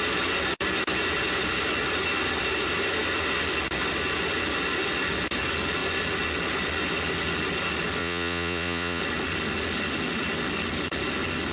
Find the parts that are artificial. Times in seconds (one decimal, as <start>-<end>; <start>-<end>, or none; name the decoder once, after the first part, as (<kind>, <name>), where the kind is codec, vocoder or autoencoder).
8.0-9.0 (vocoder, Vocos)